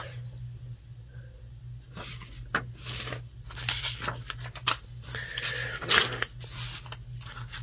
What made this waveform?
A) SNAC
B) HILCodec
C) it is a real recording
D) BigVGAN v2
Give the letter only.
C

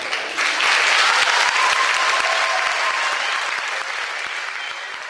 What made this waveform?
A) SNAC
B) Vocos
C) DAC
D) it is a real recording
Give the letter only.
D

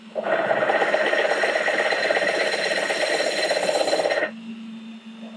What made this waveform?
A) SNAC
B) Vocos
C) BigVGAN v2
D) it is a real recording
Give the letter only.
D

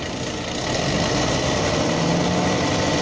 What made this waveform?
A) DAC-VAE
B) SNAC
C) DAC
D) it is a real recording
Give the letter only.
D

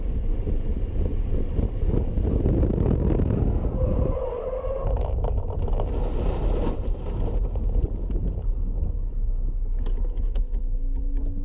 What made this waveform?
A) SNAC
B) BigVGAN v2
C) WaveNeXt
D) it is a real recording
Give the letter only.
D